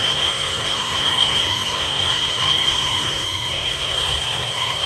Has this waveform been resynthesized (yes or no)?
yes